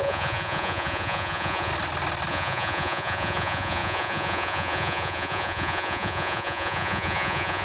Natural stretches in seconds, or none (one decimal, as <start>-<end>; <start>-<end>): 1.7-2.3